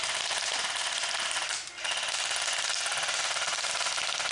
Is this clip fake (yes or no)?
no